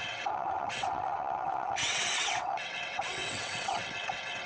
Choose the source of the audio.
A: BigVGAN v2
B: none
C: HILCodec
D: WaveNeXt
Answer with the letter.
D